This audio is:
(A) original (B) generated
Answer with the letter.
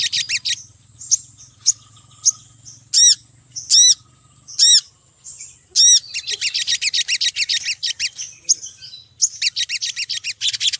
A